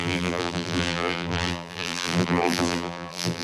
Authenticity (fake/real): fake